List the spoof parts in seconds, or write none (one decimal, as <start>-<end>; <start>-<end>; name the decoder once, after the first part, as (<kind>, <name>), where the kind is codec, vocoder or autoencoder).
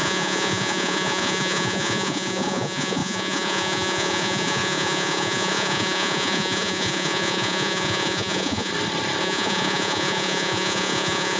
0.0-8.7 (vocoder, Vocos); 9.2-11.4